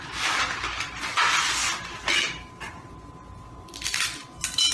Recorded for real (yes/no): yes